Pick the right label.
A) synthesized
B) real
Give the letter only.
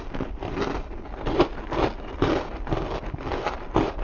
B